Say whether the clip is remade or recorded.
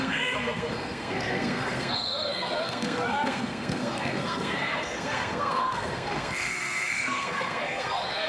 remade